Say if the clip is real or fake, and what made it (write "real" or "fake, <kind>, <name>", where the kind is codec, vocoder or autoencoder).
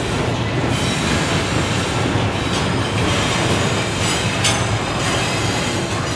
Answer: real